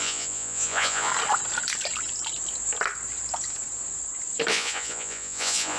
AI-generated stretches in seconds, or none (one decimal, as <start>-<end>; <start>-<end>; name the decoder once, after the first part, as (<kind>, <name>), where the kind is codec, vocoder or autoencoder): 0.0-1.1 (vocoder, Vocos); 4.5-5.8